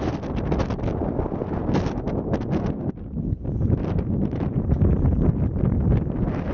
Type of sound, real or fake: real